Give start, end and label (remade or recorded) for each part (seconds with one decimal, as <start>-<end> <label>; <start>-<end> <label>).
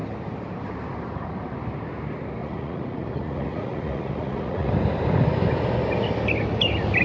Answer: 0.0-2.4 recorded; 2.4-4.7 remade; 4.7-7.0 recorded